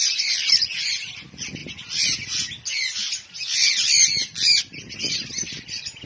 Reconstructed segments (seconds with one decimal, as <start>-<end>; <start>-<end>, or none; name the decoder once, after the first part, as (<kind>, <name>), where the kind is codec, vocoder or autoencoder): none